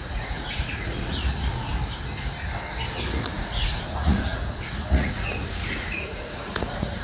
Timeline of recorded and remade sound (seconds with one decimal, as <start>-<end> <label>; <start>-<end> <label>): 0.0-1.7 remade; 1.7-3.0 recorded; 3.0-7.0 remade